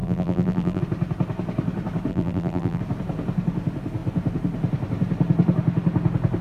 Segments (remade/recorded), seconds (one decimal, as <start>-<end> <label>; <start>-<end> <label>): 0.0-0.8 remade; 0.8-2.1 recorded; 2.1-2.8 remade; 2.8-6.4 recorded